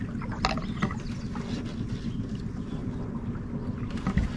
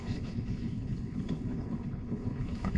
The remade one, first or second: second